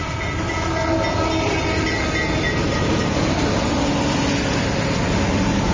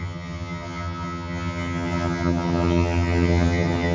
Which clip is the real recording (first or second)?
first